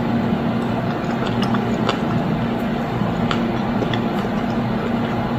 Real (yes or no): yes